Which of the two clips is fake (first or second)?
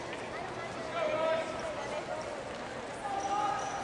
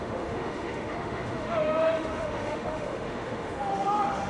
second